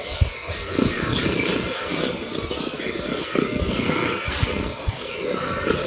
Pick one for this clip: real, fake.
fake